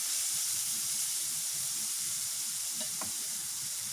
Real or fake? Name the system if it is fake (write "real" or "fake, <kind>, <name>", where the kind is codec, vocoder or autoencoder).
fake, vocoder, BigVGAN v2